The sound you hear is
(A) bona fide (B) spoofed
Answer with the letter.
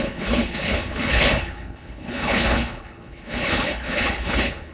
B